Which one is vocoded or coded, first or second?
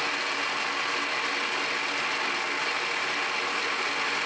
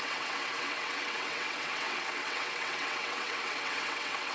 second